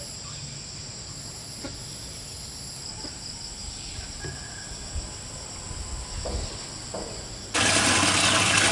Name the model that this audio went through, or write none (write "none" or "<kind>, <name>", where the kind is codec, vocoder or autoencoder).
none